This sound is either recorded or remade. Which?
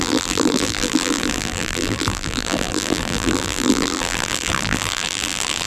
remade